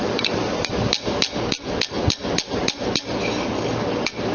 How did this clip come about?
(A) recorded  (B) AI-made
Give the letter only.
A